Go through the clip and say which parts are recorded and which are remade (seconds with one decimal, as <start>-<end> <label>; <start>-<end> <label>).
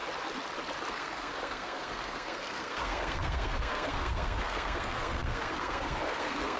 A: 0.0-0.9 recorded; 0.9-6.6 remade